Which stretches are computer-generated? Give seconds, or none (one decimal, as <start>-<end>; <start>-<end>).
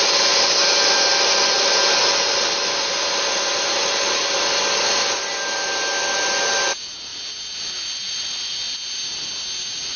none